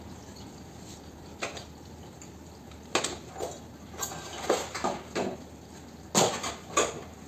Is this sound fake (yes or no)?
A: no